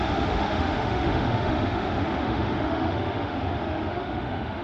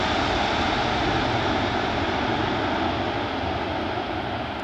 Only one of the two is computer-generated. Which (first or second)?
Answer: first